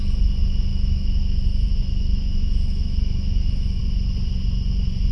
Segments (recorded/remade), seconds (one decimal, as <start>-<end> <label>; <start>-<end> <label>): 0.0-0.7 recorded; 0.7-3.8 remade; 3.8-5.1 recorded